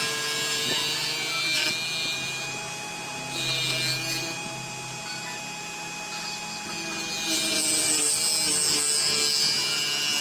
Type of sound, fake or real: real